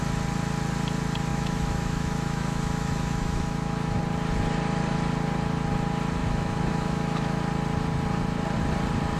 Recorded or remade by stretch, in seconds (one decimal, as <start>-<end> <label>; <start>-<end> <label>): 0.0-1.3 recorded; 1.3-4.0 remade; 4.0-6.2 recorded; 6.2-7.4 remade; 7.4-9.2 recorded